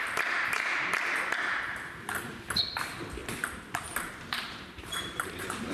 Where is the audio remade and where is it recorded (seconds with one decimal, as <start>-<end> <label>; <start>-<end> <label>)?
0.0-3.2 remade; 3.2-3.8 recorded; 3.8-5.7 remade